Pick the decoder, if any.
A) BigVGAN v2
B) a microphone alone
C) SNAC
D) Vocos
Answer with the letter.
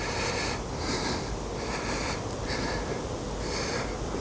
B